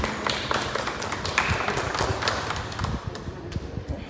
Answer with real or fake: real